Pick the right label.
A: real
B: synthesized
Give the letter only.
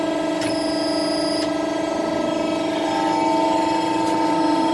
A